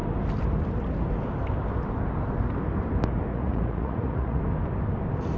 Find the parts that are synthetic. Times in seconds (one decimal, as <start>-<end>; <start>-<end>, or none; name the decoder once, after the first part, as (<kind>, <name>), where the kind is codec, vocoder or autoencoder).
3.3-4.4 (vocoder, Vocos)